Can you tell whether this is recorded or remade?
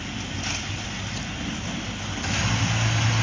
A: recorded